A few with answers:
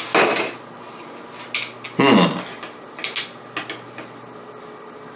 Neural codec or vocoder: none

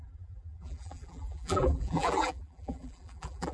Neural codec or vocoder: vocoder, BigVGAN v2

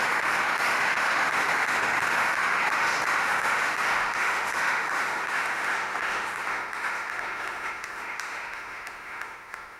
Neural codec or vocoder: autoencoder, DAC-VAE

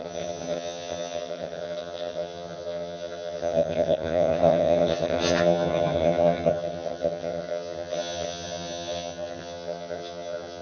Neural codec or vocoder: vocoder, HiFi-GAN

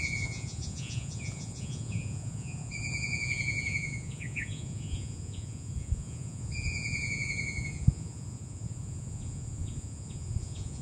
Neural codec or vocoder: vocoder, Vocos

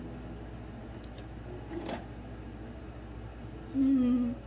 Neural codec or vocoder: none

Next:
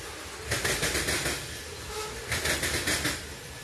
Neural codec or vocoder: none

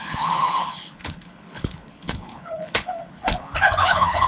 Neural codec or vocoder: codec, HILCodec